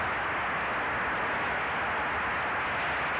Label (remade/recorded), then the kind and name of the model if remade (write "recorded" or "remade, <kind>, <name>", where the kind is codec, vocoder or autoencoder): recorded